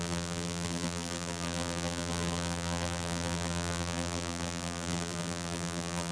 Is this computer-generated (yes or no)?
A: yes